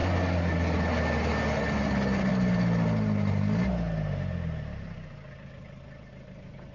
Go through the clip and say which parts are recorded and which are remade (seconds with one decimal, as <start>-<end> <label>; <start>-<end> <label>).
0.0-6.7 recorded